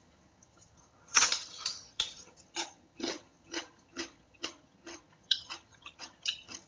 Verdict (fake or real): fake